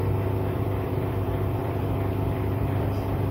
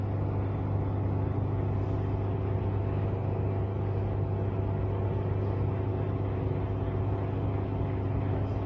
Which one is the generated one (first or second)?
first